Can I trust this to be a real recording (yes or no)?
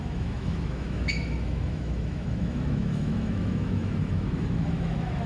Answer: no